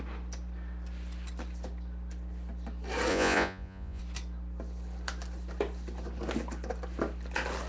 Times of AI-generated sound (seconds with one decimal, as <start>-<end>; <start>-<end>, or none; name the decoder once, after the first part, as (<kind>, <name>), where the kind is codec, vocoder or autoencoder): 3.1-4.0 (vocoder, Vocos)